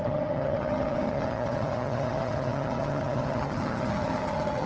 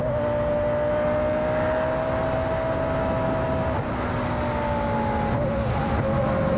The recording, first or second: second